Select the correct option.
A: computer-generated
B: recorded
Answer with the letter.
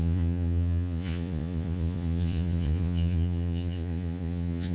A